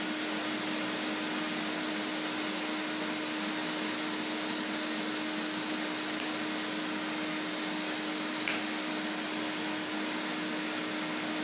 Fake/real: real